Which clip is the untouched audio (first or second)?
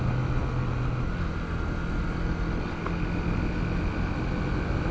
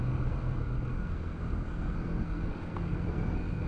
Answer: first